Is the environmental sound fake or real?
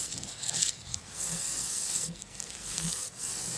fake